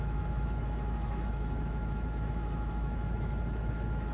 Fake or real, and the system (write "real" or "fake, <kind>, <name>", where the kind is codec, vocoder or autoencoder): fake, autoencoder, DAC-VAE